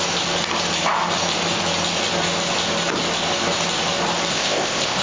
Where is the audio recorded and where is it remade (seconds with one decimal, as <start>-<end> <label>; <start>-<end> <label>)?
0.0-4.3 recorded; 4.3-5.0 remade